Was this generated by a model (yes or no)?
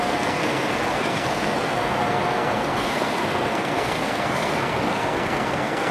yes